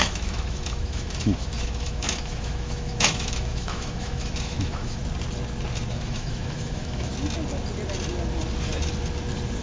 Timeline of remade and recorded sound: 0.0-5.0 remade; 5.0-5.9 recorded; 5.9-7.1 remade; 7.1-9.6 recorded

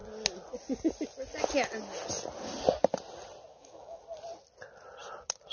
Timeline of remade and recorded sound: 0.0-3.5 recorded; 3.5-4.0 remade; 4.0-5.5 recorded

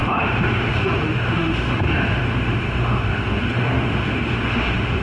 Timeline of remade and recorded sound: 0.0-5.0 remade

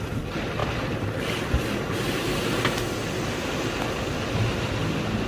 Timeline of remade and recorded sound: 0.0-5.3 recorded

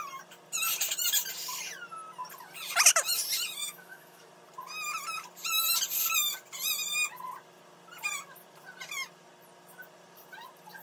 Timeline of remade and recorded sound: 0.0-3.6 recorded; 3.6-4.3 remade; 4.3-10.8 recorded

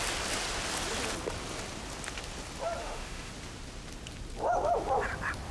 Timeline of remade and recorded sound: 0.0-2.8 recorded; 2.8-3.3 remade; 3.3-5.5 recorded

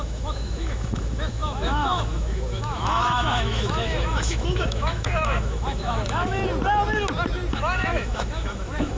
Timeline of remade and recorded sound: 0.0-6.4 remade; 6.4-7.5 recorded; 7.5-9.0 remade

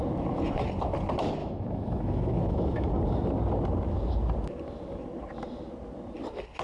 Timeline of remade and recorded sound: 0.0-1.4 recorded; 1.4-2.9 remade; 2.9-6.6 recorded